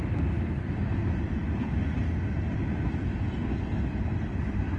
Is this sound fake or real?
real